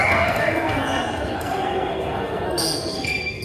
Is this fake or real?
fake